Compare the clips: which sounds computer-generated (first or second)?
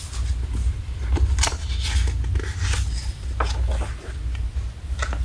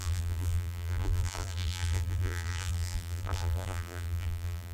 second